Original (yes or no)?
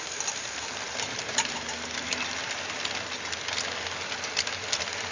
yes